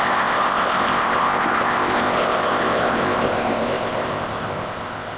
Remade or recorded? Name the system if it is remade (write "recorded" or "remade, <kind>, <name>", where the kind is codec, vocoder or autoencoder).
remade, codec, ZipCodec